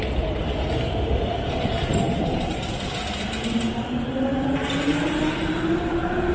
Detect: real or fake real